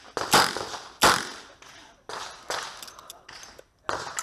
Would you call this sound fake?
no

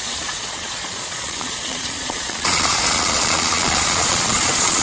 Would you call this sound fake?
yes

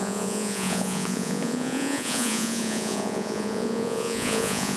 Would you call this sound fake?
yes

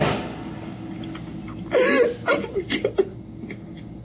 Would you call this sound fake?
no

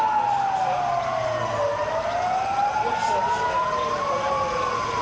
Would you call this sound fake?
no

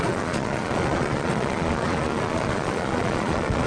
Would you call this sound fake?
yes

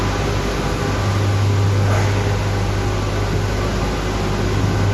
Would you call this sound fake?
no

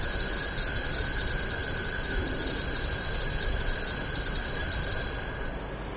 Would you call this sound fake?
no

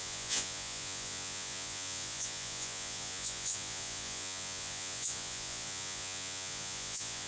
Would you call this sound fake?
yes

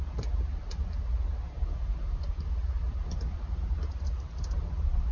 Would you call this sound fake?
no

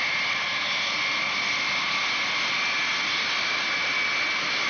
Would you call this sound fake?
no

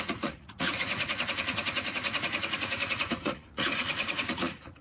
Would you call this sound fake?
yes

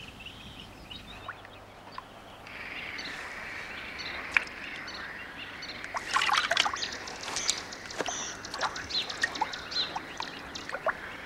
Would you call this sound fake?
no